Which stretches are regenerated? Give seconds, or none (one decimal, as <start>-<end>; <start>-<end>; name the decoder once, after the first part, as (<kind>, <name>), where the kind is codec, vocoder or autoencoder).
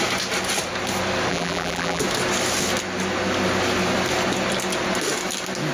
1.3-2.0 (vocoder, BigVGAN v2)